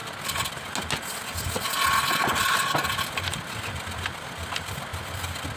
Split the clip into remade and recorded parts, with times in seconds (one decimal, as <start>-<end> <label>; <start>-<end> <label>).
0.0-5.6 recorded